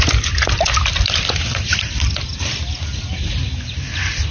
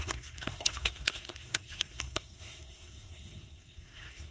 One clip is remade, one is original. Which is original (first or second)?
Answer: first